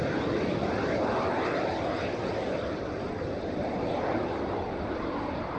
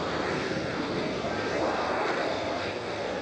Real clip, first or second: first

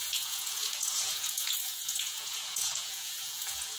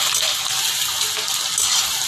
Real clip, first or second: second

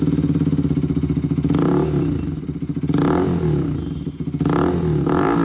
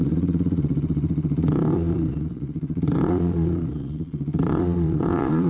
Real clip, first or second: first